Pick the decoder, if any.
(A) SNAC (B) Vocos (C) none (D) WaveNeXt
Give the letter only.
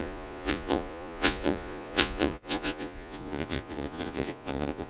B